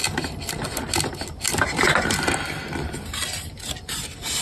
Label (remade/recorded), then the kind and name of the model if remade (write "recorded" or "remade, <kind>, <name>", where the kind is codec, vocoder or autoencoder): recorded